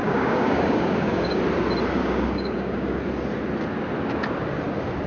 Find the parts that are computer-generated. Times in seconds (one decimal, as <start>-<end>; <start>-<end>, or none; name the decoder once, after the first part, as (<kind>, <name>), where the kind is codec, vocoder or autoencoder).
0.0-1.4 (codec, DAC); 2.0-3.0

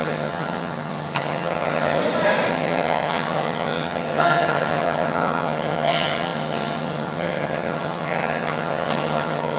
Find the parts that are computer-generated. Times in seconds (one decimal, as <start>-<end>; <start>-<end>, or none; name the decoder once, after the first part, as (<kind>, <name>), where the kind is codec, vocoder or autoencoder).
0.0-2.0 (vocoder, HiFi-GAN); 2.5-9.6

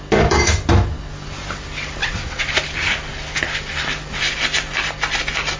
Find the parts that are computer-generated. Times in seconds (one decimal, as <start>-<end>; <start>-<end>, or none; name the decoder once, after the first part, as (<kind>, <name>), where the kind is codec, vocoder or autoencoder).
2.0-2.5 (vocoder, WaveNeXt)

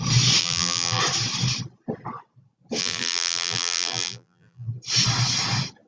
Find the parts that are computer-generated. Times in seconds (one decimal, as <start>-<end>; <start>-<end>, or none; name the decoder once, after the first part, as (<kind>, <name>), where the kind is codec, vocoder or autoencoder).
0.4-1.0 (vocoder, BigVGAN v2); 2.8-4.7

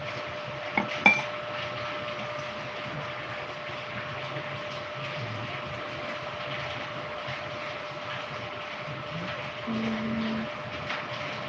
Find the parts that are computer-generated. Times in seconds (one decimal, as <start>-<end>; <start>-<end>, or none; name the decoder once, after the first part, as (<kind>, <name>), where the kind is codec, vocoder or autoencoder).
none

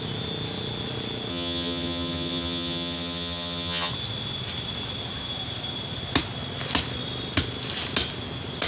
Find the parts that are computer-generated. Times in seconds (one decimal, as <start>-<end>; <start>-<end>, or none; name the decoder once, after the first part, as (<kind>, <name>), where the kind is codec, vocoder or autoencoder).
1.3-3.9 (vocoder, HiFi-GAN)

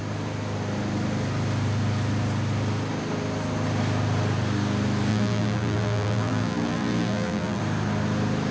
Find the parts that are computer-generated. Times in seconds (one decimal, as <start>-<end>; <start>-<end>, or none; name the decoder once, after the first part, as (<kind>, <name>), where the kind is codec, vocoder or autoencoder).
5.1-7.6 (vocoder, BigVGAN v2)

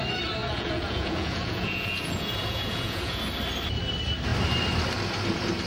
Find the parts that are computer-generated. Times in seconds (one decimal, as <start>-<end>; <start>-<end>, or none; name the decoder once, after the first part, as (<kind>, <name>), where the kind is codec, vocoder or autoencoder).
0.4-3.2 (vocoder, Vocos)